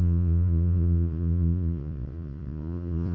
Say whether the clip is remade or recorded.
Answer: remade